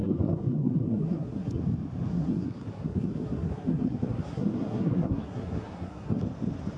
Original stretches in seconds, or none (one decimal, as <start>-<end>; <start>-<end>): 1.6-2.1; 6.2-6.8

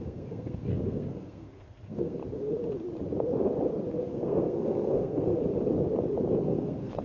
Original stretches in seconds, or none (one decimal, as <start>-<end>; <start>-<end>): 2.2-4.0; 5.3-6.4